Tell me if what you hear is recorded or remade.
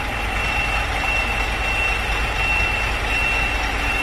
recorded